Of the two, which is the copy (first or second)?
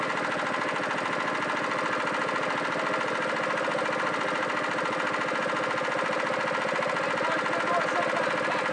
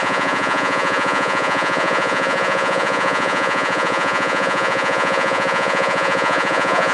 second